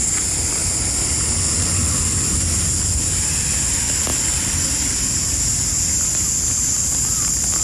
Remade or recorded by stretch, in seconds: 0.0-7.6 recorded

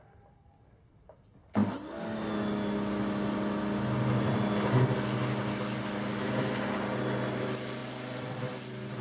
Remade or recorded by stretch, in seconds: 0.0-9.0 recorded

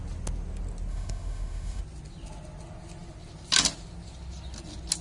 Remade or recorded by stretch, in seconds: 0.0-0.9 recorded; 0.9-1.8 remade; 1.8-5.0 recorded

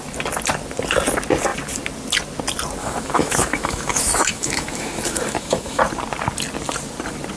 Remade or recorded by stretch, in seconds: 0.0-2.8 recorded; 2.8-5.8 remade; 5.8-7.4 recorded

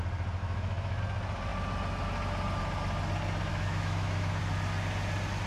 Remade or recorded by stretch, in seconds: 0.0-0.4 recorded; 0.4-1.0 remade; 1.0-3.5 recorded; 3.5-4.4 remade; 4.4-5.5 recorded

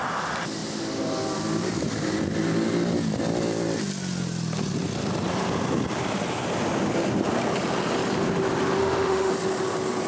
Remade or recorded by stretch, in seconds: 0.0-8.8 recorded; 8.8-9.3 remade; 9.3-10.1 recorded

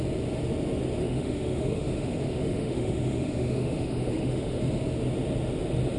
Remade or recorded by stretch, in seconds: 0.0-1.0 recorded; 1.0-4.6 remade; 4.6-6.0 recorded